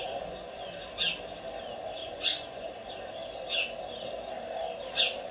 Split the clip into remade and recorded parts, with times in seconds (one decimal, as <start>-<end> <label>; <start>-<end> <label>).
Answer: 0.0-0.7 remade; 0.7-2.0 recorded; 2.0-2.8 remade; 2.8-5.3 recorded